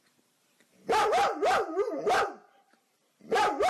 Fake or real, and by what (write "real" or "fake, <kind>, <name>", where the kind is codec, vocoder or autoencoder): real